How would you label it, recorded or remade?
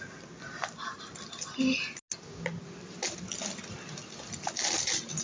recorded